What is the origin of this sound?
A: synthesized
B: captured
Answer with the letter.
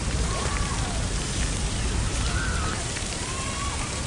A